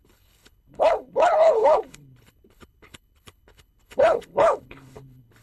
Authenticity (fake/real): fake